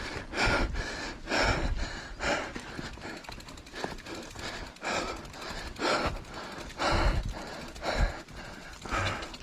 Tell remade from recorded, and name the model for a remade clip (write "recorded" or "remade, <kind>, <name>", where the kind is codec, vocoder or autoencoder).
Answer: recorded